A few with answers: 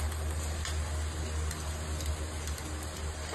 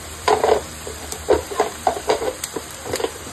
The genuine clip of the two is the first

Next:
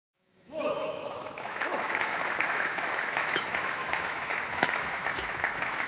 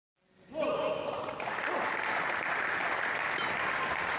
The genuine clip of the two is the second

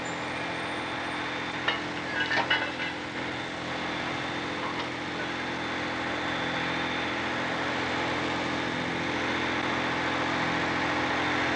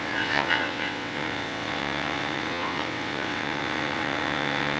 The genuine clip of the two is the first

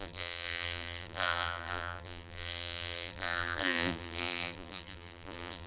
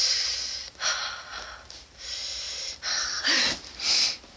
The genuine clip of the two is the second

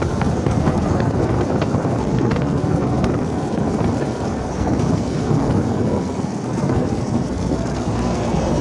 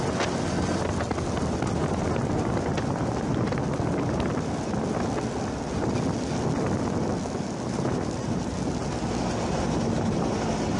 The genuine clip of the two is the second